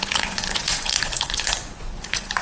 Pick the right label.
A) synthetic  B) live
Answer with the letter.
A